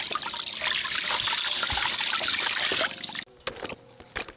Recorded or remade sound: recorded